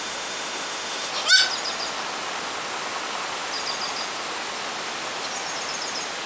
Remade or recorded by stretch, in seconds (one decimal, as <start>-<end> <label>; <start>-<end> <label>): 0.0-1.1 remade; 1.1-6.3 recorded